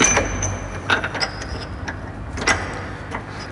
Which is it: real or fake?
real